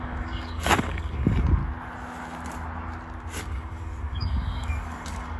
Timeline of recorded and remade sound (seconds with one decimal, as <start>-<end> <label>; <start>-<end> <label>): 0.0-1.6 remade; 1.6-3.4 recorded; 3.4-5.4 remade